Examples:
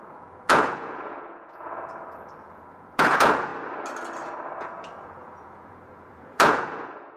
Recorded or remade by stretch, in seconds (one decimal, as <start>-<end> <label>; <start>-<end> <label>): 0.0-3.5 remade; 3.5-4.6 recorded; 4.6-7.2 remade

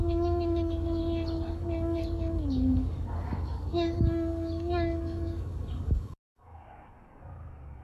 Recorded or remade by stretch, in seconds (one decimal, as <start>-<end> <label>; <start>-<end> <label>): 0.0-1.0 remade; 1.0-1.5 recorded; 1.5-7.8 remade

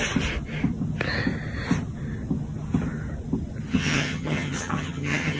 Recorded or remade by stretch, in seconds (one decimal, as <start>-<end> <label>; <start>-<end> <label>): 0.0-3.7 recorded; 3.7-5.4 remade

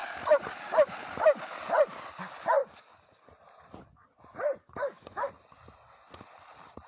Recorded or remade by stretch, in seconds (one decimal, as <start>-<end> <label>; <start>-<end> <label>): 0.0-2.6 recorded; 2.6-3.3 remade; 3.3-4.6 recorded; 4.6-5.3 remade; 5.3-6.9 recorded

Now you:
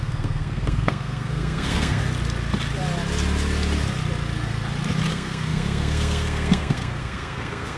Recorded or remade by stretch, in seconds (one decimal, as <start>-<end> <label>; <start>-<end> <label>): 0.0-2.0 remade; 2.0-5.1 recorded; 5.1-7.8 remade